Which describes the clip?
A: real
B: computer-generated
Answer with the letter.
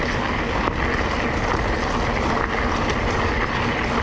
A